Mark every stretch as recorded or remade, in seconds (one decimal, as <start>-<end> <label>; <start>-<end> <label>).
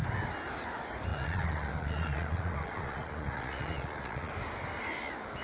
0.0-1.1 recorded; 1.1-4.3 remade; 4.3-5.4 recorded